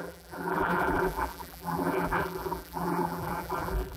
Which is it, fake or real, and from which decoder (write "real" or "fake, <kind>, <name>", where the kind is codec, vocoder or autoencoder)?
fake, vocoder, BigVGAN v2